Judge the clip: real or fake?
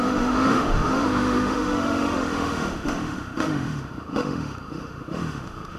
fake